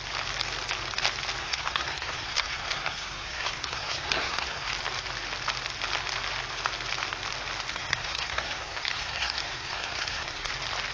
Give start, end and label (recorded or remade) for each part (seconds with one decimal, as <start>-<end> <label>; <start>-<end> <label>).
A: 0.0-1.4 recorded; 1.4-4.7 remade; 4.7-7.7 recorded; 7.7-10.5 remade; 10.5-10.9 recorded